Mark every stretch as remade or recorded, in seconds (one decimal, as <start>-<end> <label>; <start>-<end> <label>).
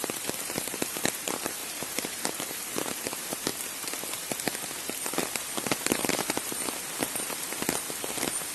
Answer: 0.0-3.5 remade; 3.5-5.4 recorded; 5.4-6.6 remade; 6.6-8.1 recorded; 8.1-8.5 remade